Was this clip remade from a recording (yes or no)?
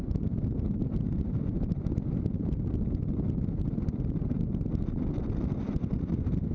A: no